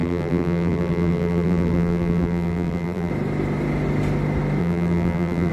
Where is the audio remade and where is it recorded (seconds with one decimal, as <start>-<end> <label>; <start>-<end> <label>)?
0.0-3.1 remade; 3.1-4.6 recorded; 4.6-5.5 remade